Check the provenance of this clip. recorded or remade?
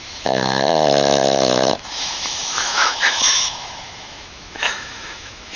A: remade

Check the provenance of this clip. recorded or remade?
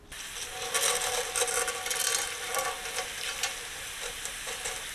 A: recorded